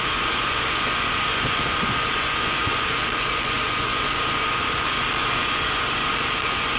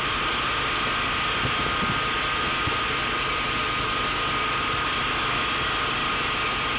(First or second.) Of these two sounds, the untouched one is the second